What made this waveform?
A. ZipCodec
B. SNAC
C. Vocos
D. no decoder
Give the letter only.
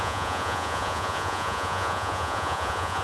C